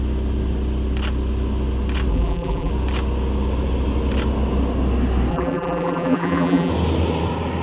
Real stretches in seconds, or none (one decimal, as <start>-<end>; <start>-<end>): 0.0-2.1; 2.7-5.3; 6.7-7.6